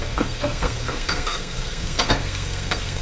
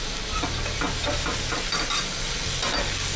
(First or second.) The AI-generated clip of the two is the first